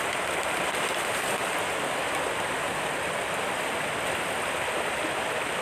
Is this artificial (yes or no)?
no